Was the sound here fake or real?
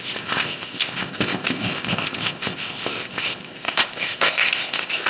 fake